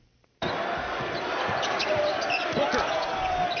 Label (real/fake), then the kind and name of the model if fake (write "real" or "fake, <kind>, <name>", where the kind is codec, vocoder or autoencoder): real